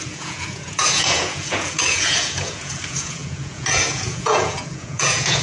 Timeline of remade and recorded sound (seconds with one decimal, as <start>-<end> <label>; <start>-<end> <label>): 0.0-5.4 remade